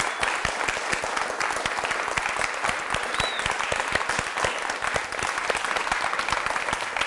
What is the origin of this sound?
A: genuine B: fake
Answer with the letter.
A